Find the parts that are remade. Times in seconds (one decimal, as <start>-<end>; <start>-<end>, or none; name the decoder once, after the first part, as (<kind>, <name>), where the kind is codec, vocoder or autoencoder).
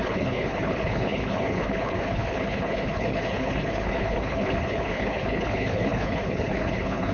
0.0-7.1 (codec, HILCodec)